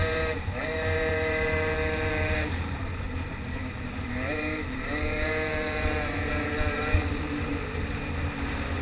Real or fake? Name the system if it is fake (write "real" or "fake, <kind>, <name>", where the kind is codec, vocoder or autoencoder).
fake, vocoder, BigVGAN v2